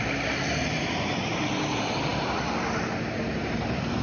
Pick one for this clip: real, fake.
real